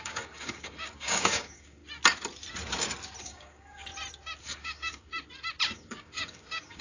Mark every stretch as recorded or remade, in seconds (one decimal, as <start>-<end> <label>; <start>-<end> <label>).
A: 0.0-1.8 remade; 1.8-3.2 recorded; 3.2-3.9 remade; 3.9-4.4 recorded; 4.4-5.1 remade; 5.1-5.7 recorded; 5.7-6.8 remade